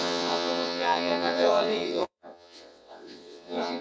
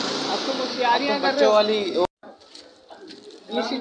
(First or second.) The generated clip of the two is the first